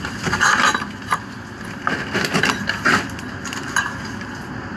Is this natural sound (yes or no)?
yes